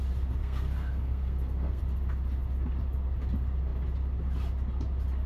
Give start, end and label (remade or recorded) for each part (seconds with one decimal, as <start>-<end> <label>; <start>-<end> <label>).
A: 0.0-0.4 recorded; 0.4-1.8 remade; 1.8-5.3 recorded